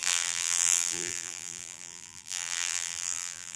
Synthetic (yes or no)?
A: yes